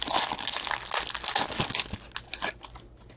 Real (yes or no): yes